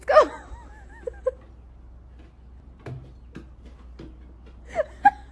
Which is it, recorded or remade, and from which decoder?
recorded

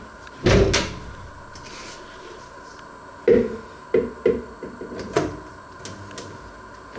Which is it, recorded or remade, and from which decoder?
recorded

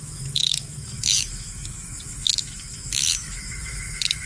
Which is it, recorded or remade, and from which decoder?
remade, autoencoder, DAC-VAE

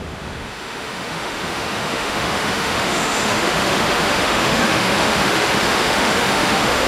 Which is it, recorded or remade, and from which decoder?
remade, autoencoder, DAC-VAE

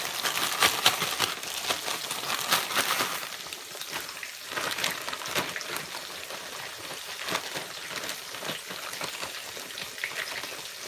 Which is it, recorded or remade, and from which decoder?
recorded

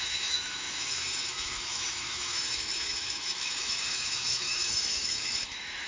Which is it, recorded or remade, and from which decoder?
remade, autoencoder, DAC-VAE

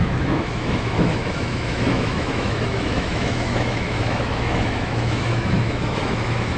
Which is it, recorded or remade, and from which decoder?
remade, autoencoder, DAC-VAE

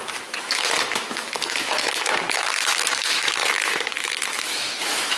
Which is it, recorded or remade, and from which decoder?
remade, autoencoder, DAC-VAE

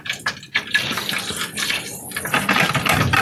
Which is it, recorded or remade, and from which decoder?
recorded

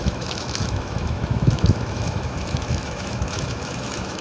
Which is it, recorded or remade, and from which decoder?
remade, autoencoder, DAC-VAE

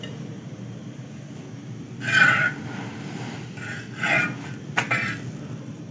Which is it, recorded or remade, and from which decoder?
recorded